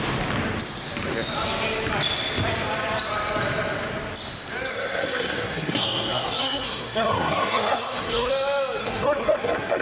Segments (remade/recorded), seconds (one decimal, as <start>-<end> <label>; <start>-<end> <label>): 0.0-4.7 recorded; 4.7-8.3 remade; 8.3-8.8 recorded; 8.8-9.8 remade